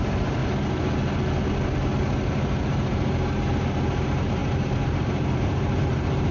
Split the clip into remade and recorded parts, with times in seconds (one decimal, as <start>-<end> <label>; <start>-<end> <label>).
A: 0.0-0.4 remade; 0.4-2.3 recorded; 2.3-6.3 remade